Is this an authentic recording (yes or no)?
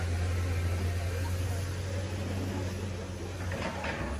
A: yes